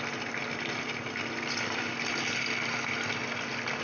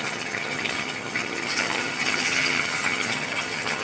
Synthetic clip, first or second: second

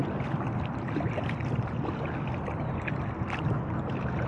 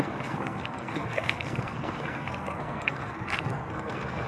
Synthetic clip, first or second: second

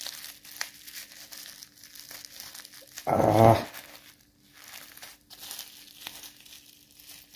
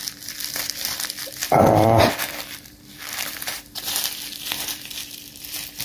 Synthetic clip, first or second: second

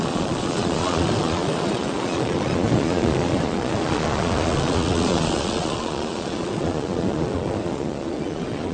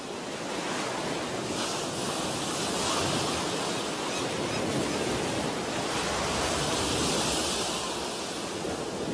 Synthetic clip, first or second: first